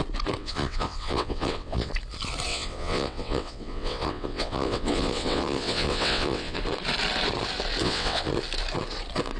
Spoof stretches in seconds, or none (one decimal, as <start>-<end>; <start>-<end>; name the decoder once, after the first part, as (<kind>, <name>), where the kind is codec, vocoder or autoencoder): 0.4-1.9 (vocoder, WaveNeXt); 2.5-6.6; 7.8-8.3